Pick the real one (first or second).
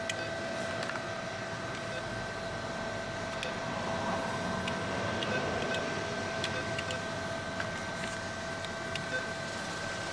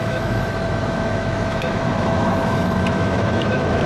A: first